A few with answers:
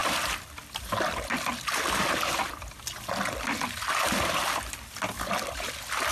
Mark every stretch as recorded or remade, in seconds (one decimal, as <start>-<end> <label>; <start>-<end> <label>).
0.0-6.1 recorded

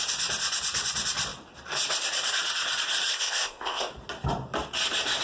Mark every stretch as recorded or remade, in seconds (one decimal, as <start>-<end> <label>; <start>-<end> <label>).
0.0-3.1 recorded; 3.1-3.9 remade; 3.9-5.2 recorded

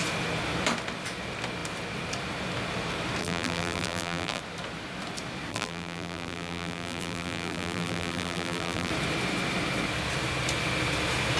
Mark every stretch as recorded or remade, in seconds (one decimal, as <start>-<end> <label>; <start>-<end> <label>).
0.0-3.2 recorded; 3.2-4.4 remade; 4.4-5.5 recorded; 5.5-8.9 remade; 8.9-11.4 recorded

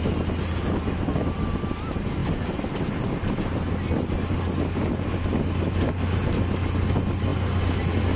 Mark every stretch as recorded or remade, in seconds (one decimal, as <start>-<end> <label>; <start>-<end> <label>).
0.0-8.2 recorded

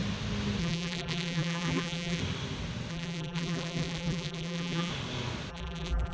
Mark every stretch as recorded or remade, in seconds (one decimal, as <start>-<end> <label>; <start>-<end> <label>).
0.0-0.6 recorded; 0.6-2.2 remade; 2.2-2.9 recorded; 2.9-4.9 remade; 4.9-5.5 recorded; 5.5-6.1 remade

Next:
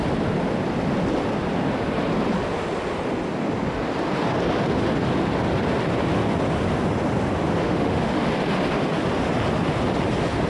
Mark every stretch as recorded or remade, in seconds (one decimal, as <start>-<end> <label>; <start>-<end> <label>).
0.0-7.6 recorded; 7.6-8.2 remade; 8.2-10.5 recorded